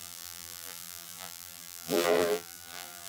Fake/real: fake